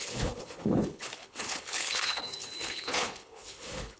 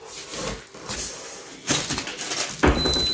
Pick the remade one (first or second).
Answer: first